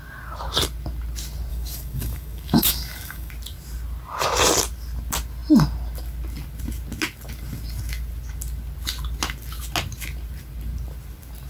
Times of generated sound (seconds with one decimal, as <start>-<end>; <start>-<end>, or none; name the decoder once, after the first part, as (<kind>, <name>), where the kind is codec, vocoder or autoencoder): 1.5-3.3 (codec, DAC)